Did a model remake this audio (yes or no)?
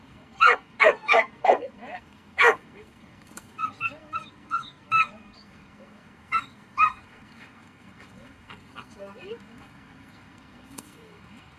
yes